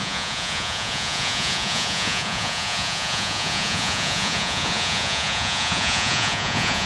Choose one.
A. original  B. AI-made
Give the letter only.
B